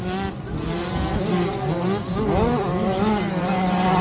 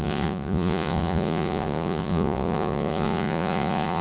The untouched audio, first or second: first